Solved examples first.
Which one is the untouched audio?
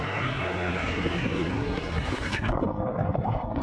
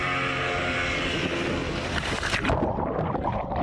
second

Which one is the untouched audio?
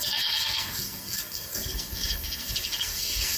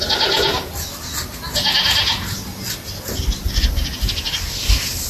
second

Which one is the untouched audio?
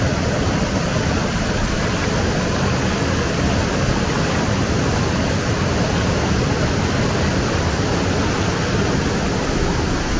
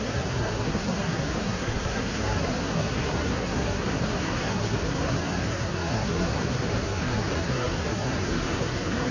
first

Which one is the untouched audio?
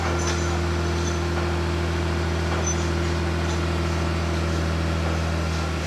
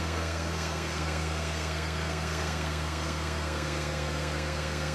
first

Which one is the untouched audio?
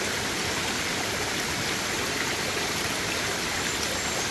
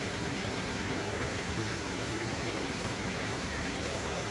first